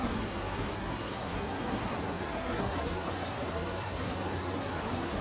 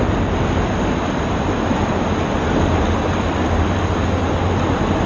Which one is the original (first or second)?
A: second